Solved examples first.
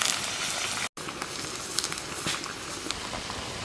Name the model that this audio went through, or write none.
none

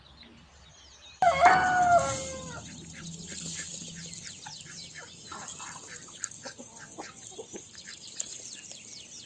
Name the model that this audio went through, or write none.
none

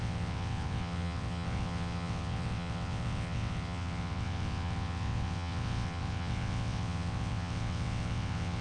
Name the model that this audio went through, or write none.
vocoder, WaveNeXt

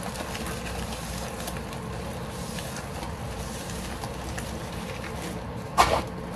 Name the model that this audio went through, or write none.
none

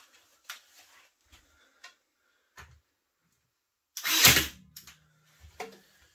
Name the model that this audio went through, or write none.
none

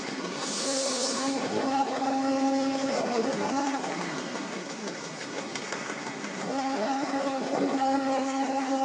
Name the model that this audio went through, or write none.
codec, SNAC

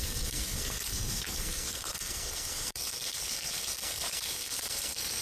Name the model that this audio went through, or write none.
codec, SNAC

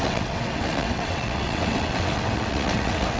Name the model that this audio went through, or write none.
vocoder, WaveNeXt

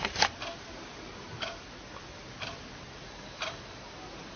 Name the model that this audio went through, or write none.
none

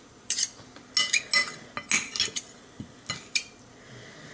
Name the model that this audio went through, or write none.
none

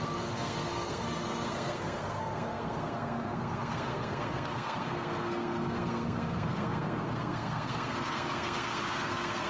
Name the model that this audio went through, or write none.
codec, SNAC